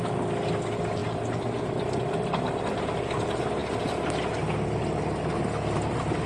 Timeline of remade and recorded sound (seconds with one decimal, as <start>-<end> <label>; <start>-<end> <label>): 0.0-6.3 recorded